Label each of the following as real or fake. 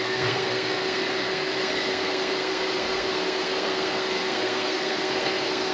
fake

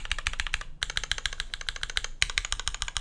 real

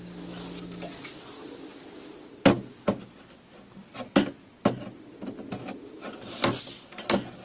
real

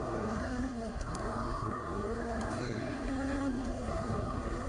fake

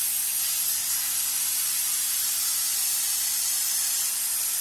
real